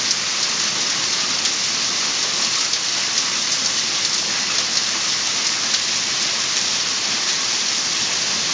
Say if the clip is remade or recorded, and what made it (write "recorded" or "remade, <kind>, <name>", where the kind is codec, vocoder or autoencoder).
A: recorded